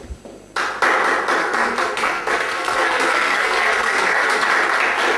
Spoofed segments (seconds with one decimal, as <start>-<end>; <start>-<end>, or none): 1.4-4.5